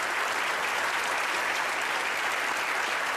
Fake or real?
real